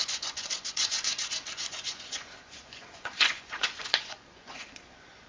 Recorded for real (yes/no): no